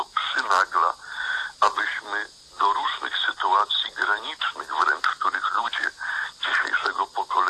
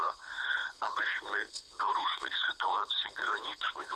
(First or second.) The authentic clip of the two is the first